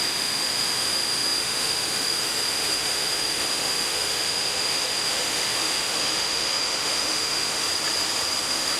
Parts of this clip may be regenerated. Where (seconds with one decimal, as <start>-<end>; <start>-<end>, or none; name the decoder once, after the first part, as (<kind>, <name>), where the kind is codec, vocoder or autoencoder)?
0.0-7.7 (autoencoder, DAC-VAE); 8.4-8.8